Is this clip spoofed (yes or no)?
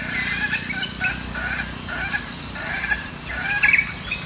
no